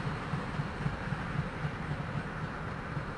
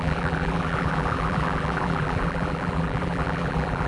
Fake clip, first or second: second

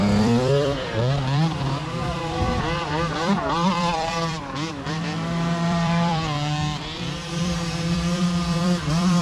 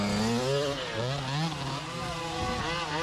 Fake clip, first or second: first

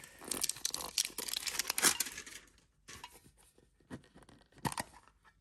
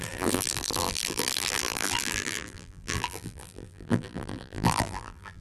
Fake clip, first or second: second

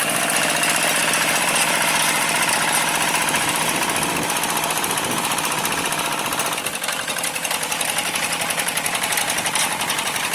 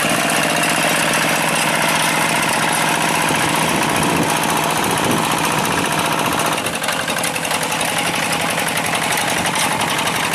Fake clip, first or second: first